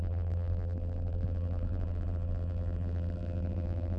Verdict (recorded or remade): remade